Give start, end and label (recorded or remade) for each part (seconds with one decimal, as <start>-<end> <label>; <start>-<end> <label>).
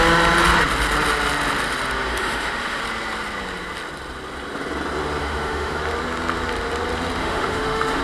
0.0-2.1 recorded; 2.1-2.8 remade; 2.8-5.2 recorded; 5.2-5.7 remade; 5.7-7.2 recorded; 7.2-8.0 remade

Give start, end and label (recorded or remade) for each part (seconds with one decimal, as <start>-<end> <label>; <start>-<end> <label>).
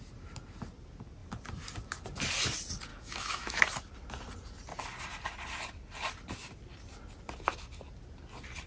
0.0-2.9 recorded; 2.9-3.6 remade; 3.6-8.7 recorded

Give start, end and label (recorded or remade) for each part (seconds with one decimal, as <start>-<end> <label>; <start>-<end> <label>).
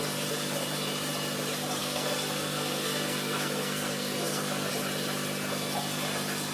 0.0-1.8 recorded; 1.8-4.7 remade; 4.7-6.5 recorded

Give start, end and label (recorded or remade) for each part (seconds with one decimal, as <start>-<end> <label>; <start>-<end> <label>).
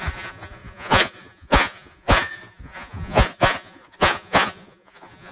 0.0-5.3 remade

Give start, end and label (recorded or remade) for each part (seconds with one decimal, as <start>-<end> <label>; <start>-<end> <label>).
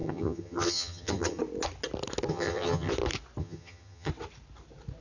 0.0-1.4 remade; 1.4-2.3 recorded; 2.3-2.9 remade; 2.9-3.4 recorded; 3.4-4.1 remade; 4.1-5.0 recorded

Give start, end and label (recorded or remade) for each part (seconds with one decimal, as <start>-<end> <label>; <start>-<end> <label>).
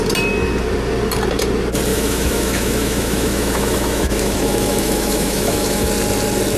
0.0-1.9 recorded; 1.9-5.9 remade; 5.9-6.6 recorded